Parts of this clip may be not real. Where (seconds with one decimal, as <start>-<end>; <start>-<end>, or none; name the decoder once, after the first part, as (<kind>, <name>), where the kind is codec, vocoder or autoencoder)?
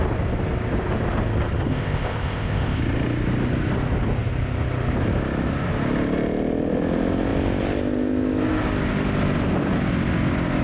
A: 1.7-2.8 (codec, ZipCodec)